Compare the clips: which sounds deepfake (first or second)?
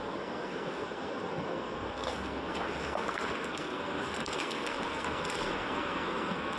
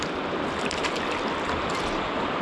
first